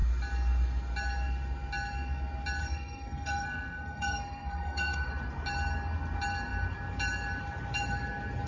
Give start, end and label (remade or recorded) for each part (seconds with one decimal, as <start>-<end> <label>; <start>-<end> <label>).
0.0-2.6 recorded; 2.6-5.1 remade; 5.1-8.5 recorded